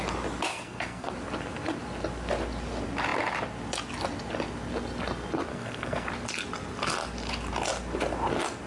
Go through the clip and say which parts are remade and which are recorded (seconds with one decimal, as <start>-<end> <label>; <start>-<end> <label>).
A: 0.0-0.5 recorded; 0.5-1.1 remade; 1.1-5.5 recorded; 5.5-6.1 remade; 6.1-8.7 recorded